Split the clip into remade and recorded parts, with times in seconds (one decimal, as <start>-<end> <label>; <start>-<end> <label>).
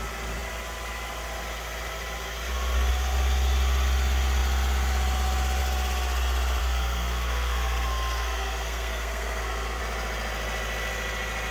0.0-6.6 recorded; 6.6-9.8 remade; 9.8-11.5 recorded